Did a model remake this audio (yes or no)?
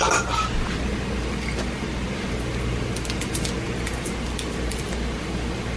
yes